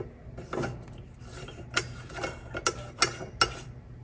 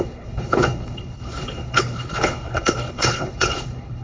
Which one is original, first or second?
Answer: first